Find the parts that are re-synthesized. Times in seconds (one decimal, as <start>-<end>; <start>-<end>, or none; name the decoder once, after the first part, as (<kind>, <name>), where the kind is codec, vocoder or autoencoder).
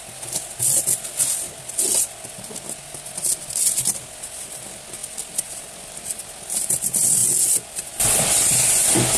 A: none